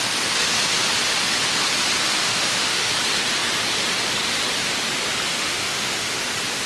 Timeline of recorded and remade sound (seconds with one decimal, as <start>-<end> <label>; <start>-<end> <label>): 0.0-2.2 recorded; 2.2-2.9 remade; 2.9-5.3 recorded; 5.3-6.2 remade; 6.2-6.7 recorded